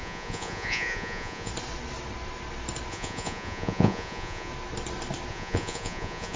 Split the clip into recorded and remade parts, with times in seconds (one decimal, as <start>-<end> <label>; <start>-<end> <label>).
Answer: 0.0-1.5 remade; 1.5-2.9 recorded; 2.9-4.5 remade; 4.5-5.3 recorded; 5.3-6.4 remade